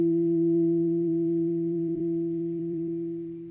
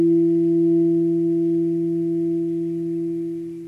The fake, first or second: first